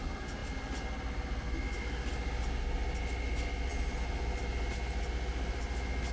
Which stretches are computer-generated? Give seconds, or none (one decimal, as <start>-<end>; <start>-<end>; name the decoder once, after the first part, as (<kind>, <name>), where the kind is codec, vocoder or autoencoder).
none